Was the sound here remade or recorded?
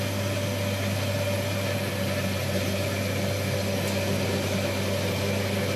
recorded